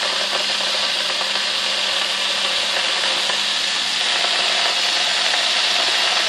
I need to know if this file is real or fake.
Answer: real